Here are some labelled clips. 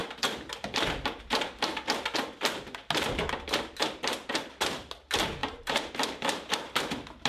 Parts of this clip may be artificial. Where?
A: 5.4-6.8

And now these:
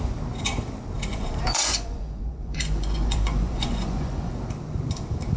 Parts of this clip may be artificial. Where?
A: 1.1-4.3

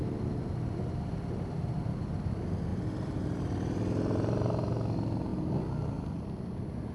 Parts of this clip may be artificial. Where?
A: none

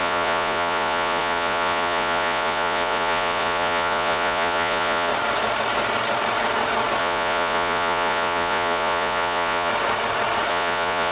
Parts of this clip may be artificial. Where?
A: 0.0-5.1; 7.0-9.7; 10.5-11.1